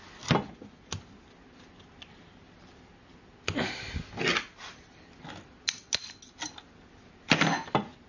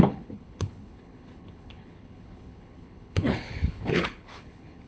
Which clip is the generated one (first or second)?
second